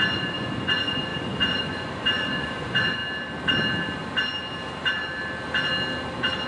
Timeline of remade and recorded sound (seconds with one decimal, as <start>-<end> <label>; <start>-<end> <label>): 0.0-3.0 remade; 3.0-6.5 recorded